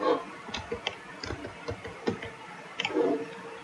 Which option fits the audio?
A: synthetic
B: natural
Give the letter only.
A